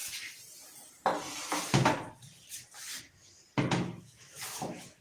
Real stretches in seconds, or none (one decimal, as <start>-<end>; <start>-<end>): 0.0-3.0; 3.4-4.0